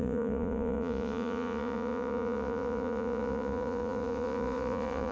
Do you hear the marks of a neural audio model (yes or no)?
yes